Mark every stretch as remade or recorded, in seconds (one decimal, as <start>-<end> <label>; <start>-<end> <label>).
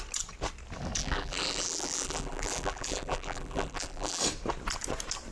0.0-1.0 recorded; 1.0-4.2 remade; 4.2-5.3 recorded